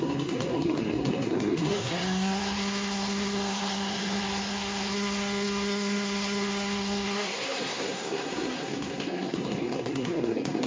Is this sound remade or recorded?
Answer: remade